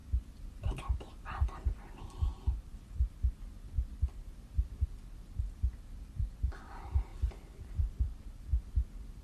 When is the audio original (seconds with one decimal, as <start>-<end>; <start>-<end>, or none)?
0.5-7.1; 7.9-9.2